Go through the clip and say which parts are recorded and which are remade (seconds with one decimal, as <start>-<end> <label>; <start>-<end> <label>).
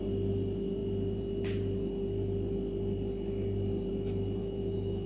0.0-4.4 recorded; 4.4-5.1 remade